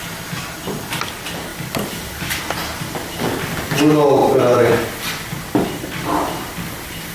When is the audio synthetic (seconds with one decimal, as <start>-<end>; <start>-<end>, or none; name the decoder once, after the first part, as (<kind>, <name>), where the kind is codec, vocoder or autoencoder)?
1.5-2.4 (vocoder, BigVGAN v2); 4.2-7.1